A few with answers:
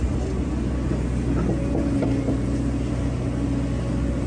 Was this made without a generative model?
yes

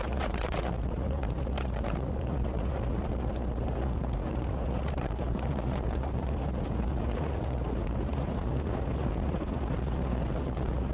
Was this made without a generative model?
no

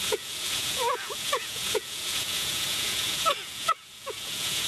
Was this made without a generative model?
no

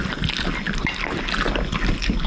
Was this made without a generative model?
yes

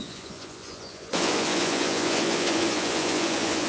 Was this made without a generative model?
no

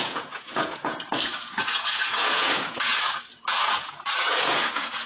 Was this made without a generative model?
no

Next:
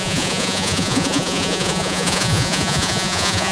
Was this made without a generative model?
no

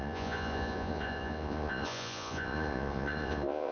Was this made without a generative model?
no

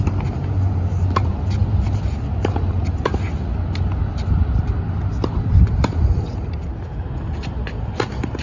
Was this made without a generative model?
yes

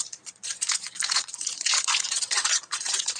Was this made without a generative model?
no